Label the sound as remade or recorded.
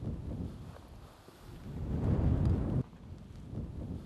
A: recorded